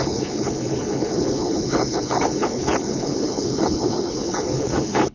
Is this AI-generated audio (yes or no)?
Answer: yes